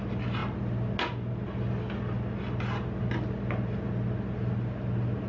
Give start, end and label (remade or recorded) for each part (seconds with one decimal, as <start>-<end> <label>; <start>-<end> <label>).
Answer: 0.0-5.3 recorded